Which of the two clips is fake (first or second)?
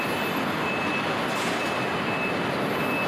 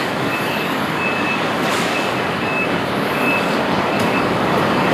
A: second